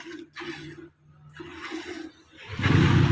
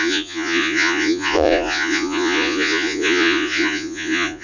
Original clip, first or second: first